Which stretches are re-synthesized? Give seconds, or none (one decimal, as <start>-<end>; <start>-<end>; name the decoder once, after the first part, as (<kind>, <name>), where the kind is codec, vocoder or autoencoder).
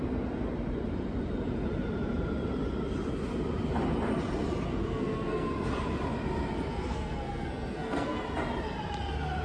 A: 4.7-5.5 (codec, SNAC); 6.7-8.2